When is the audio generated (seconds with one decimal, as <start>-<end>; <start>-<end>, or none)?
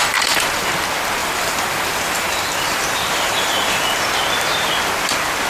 0.0-0.7; 1.2-4.0